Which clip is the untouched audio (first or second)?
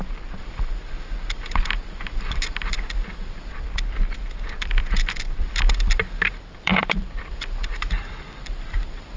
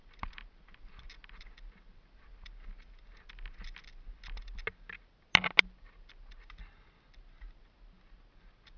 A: second